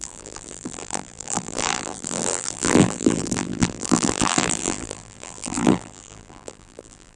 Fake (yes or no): yes